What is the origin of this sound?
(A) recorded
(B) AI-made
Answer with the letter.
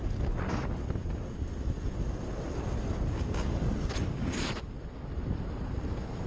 A